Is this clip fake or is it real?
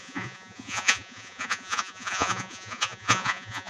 fake